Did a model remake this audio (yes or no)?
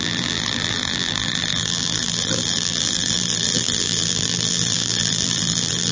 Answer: yes